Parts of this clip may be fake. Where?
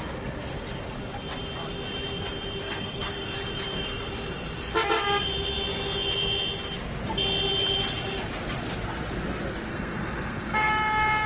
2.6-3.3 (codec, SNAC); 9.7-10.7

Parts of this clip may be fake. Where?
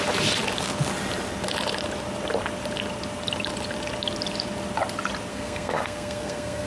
5.3-6.7 (codec, SNAC)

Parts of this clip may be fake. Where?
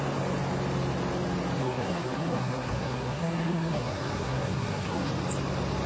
1.6-5.1 (codec, SNAC)